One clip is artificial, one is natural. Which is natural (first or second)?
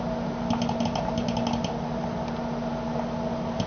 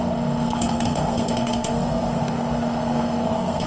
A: first